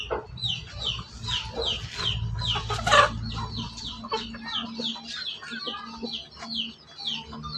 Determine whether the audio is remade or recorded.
recorded